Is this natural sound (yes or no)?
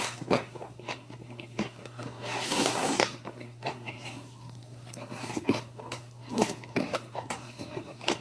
no